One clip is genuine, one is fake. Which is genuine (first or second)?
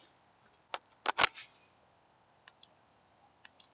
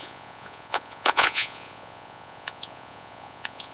first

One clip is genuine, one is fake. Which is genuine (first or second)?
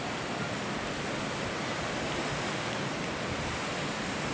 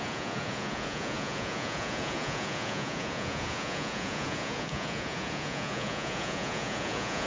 first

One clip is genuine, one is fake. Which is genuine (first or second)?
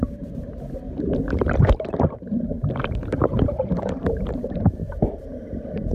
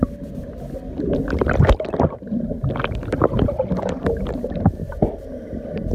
second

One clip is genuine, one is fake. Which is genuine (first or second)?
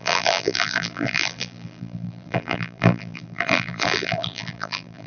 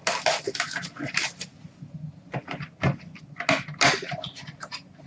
second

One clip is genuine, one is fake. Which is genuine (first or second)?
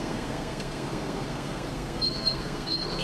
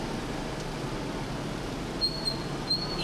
second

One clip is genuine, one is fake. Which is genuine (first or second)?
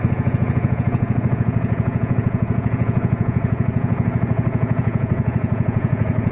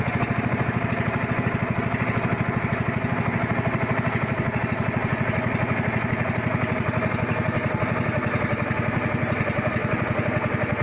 second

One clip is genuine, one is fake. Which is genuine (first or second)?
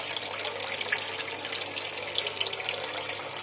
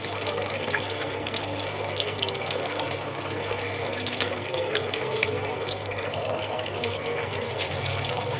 first